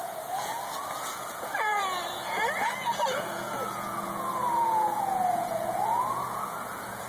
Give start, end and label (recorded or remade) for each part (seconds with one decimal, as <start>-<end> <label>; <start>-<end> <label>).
0.0-7.1 remade